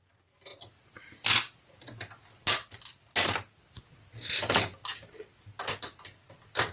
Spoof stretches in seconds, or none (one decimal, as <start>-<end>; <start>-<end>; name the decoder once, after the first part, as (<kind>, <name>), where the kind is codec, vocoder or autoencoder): none